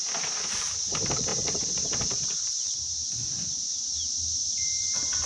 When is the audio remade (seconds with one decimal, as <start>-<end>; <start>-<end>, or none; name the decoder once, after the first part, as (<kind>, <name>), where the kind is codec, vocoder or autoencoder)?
0.6-5.3 (vocoder, BigVGAN v2)